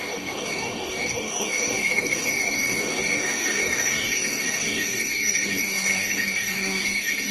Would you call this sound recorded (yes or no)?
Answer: no